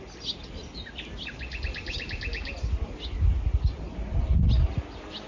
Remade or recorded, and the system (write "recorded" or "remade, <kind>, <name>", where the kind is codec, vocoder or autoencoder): recorded